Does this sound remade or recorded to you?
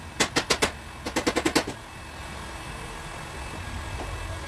recorded